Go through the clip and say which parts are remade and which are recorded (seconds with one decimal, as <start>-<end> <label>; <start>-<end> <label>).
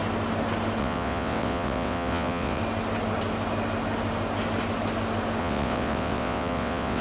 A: 0.0-0.8 recorded; 0.8-2.6 remade; 2.6-5.4 recorded; 5.4-7.0 remade